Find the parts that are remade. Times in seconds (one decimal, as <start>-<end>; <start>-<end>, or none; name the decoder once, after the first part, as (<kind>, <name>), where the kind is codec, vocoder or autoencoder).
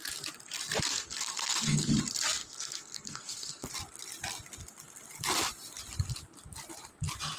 0.9-1.9 (codec, SNAC); 2.4-3.7